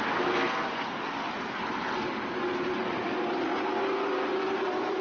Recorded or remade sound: recorded